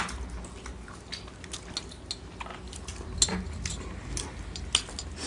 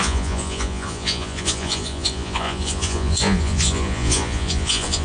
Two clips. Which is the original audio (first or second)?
first